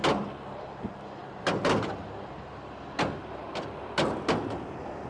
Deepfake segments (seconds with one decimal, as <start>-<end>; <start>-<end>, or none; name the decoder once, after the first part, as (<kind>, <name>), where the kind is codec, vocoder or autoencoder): none